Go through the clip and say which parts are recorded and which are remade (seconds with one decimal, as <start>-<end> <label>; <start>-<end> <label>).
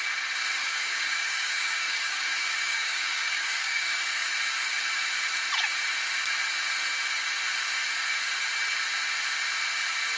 0.0-0.6 recorded; 0.6-4.3 remade; 4.3-10.2 recorded